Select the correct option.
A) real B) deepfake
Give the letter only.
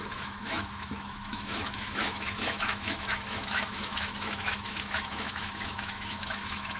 B